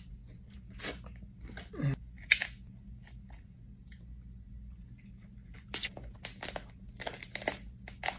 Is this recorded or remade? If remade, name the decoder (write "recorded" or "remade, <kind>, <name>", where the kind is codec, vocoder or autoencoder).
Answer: recorded